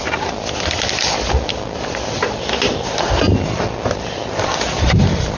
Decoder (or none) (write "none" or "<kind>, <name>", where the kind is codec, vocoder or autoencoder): none